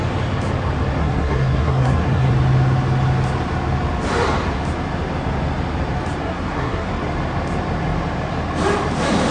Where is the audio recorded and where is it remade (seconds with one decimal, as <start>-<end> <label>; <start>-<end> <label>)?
0.0-1.0 recorded; 1.0-2.3 remade; 2.3-6.2 recorded; 6.2-6.9 remade; 6.9-9.3 recorded